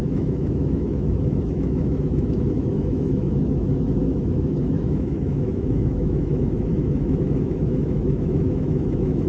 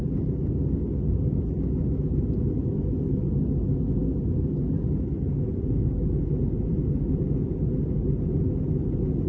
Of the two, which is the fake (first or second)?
first